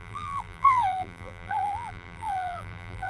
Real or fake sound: fake